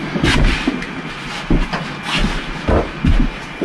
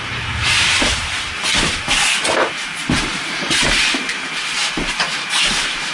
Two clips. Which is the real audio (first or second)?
first